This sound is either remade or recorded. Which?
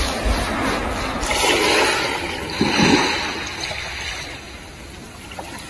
recorded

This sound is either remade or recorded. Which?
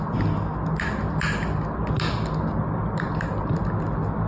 recorded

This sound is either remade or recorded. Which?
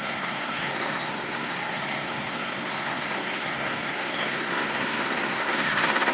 remade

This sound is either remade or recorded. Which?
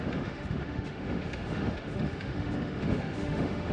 remade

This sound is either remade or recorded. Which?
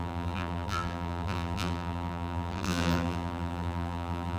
remade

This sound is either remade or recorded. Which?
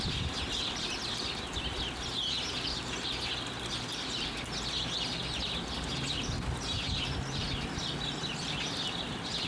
recorded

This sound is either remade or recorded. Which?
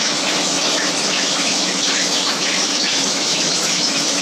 remade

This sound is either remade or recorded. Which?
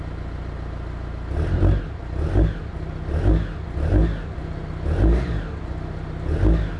recorded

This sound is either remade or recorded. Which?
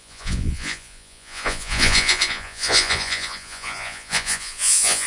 remade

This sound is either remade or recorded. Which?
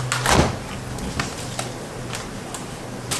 recorded